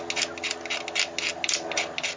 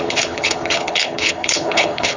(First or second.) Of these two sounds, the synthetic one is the second